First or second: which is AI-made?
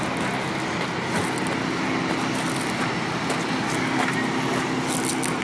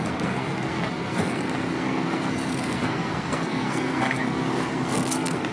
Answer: second